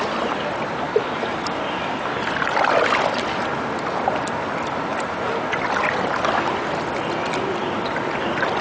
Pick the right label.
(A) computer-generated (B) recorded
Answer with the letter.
B